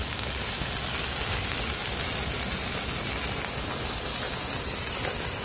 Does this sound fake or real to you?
real